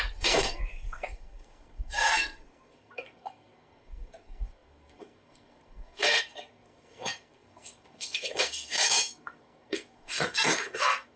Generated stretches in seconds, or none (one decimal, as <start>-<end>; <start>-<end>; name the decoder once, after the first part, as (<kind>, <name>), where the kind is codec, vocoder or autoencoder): 0.0-11.2 (codec, SNAC)